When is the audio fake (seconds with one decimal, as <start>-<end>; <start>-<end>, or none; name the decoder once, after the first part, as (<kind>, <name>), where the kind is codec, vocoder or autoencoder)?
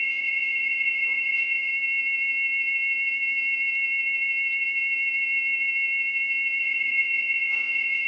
0.0-1.7 (vocoder, Vocos); 6.6-8.1